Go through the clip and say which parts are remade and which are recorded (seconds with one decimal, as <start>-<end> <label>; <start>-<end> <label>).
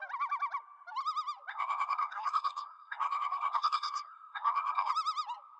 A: 0.0-1.5 recorded; 1.5-4.9 remade; 4.9-5.6 recorded